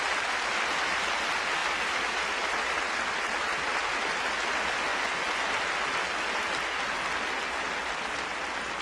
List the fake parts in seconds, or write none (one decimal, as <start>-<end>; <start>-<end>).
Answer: 4.9-5.4